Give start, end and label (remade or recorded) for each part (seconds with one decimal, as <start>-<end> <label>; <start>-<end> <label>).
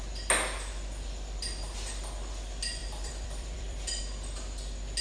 0.0-2.8 recorded; 2.8-4.0 remade; 4.0-5.0 recorded